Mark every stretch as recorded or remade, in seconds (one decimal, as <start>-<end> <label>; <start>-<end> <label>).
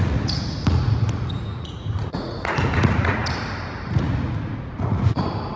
0.0-3.2 remade; 3.2-3.9 recorded; 3.9-5.6 remade